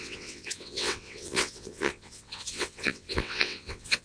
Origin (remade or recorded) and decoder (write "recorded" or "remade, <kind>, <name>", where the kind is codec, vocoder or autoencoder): remade, vocoder, WaveNeXt